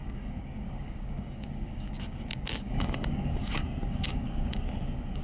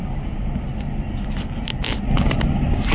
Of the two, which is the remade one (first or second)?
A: first